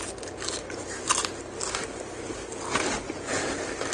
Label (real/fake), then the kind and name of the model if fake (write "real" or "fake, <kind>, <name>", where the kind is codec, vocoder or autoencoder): real